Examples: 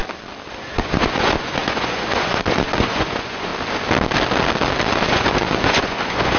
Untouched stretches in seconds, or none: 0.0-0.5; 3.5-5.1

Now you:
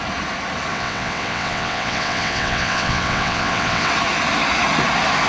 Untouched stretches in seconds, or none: 0.0-0.7; 3.9-5.3